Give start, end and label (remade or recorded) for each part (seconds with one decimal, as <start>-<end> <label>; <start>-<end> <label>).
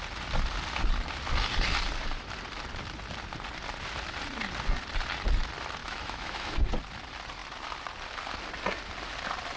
0.0-5.8 recorded; 5.8-6.7 remade; 6.7-9.6 recorded